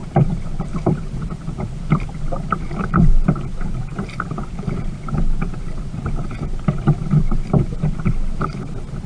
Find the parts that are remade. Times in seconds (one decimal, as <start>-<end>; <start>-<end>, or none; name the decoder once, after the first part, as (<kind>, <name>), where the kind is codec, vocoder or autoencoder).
0.0-3.1 (vocoder, BigVGAN v2); 3.9-6.0